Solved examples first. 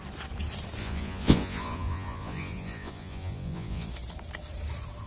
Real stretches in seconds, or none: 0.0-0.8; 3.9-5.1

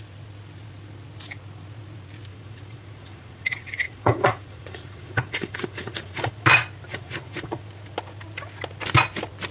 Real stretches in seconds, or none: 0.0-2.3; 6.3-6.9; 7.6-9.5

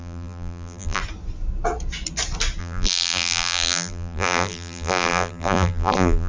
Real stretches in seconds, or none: 1.0-2.6

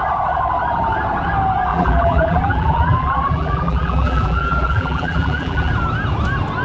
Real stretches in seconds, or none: 0.0-1.7; 5.7-6.6

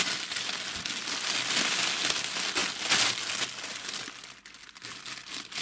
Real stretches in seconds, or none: 0.0-5.6

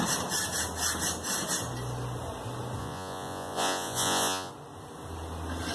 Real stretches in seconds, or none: 0.0-2.8; 4.5-5.7

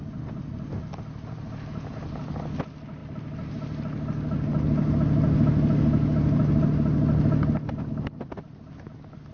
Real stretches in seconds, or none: 0.0-9.3

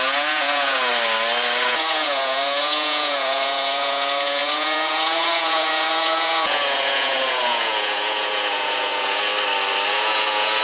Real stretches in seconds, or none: 0.9-1.6; 9.3-9.9